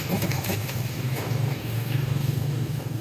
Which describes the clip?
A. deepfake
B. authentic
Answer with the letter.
A